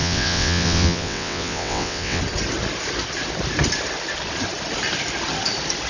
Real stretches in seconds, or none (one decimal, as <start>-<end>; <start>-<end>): 2.2-5.9